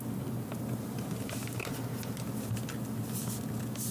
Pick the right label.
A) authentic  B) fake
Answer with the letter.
A